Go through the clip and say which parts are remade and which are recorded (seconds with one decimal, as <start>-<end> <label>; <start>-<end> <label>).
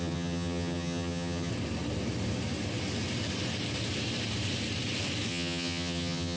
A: 0.0-1.5 remade; 1.5-5.3 recorded; 5.3-6.4 remade